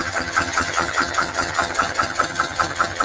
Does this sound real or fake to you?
fake